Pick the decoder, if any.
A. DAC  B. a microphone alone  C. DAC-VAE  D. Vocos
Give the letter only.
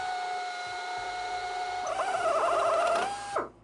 B